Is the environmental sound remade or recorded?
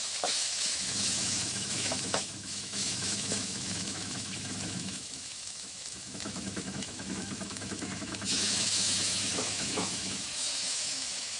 remade